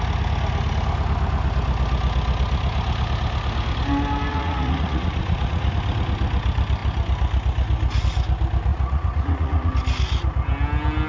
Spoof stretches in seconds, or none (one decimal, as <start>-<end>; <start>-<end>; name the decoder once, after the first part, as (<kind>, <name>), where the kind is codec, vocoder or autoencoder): 4.3-5.7 (vocoder, Vocos); 8.7-9.7